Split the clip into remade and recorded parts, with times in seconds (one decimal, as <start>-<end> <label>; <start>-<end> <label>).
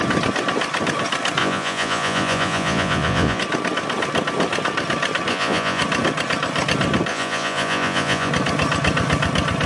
0.0-1.4 recorded; 1.4-3.4 remade; 3.4-5.3 recorded; 5.3-5.8 remade; 5.8-7.1 recorded; 7.1-8.3 remade; 8.3-9.7 recorded